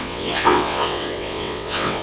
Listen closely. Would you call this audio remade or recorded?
remade